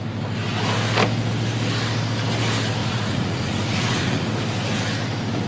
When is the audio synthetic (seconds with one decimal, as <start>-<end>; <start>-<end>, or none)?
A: 2.8-4.3